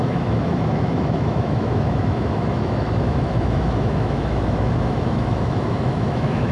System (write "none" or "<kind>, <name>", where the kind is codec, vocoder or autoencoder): autoencoder, DAC-VAE